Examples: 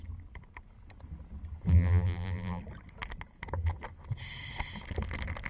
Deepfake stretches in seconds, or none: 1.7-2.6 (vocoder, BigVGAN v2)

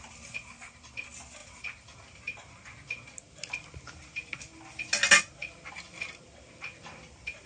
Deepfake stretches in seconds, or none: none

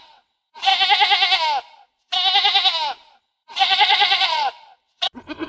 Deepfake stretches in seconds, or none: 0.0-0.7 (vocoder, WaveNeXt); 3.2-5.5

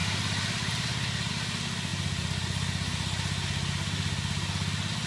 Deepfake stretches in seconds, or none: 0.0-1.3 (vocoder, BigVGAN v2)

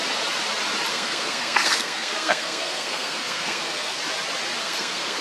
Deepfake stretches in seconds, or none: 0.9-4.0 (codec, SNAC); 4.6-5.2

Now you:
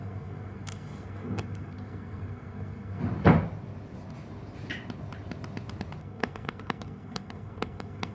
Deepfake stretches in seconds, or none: 0.0-3.0 (codec, SNAC); 6.0-8.1